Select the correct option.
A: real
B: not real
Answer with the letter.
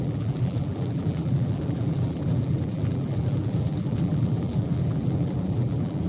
B